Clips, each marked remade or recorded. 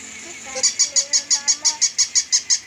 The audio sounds recorded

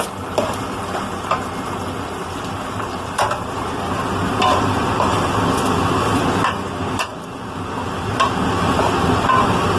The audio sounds recorded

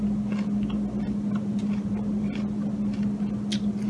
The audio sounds recorded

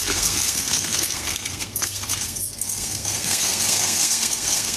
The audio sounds remade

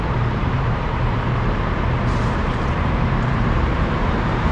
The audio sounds remade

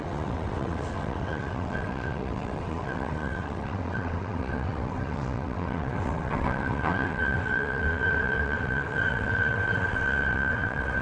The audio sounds remade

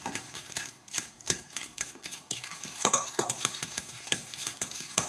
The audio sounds remade